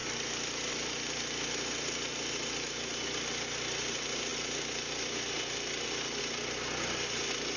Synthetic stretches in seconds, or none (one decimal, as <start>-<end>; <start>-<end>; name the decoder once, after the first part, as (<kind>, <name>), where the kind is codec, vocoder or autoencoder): none